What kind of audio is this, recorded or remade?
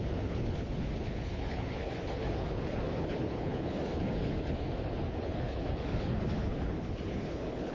remade